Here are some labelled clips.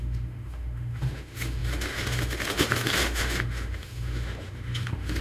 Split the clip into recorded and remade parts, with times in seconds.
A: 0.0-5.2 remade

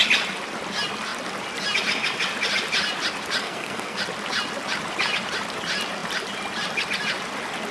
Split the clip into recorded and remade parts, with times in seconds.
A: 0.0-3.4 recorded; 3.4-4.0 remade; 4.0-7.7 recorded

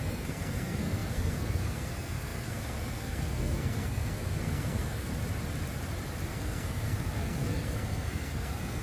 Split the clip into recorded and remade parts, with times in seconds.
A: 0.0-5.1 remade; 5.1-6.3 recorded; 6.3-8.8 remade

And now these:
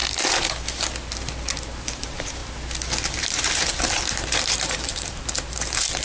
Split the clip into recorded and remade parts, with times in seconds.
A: 0.0-2.0 recorded; 2.0-2.4 remade; 2.4-3.2 recorded; 3.2-6.0 remade